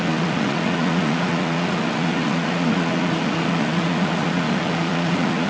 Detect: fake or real fake